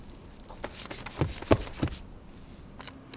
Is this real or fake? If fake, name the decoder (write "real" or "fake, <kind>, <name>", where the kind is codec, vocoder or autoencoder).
real